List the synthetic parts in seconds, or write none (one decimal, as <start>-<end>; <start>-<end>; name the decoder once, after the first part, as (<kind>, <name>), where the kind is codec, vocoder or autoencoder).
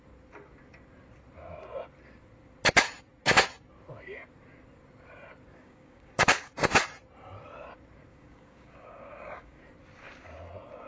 5.5-6.5 (codec, DAC); 8.1-9.6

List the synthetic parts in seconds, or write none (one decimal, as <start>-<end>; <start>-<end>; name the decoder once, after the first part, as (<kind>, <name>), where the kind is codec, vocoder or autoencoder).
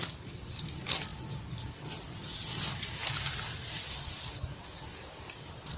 none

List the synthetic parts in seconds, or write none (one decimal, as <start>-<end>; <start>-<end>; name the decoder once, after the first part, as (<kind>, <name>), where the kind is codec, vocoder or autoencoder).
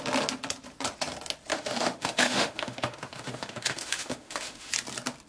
1.5-4.7 (autoencoder, DAC-VAE)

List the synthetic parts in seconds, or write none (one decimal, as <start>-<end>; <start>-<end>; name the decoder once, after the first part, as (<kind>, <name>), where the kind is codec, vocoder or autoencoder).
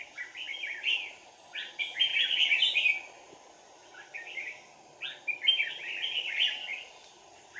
none